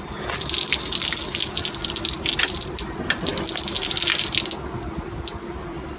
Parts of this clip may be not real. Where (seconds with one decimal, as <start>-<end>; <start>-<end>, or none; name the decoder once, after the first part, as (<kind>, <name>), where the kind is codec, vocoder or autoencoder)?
none

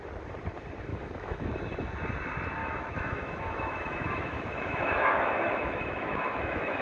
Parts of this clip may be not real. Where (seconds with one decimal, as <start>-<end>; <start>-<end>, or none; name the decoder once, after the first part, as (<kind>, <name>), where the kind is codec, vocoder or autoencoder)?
0.9-1.5 (autoencoder, DAC-VAE); 2.6-6.8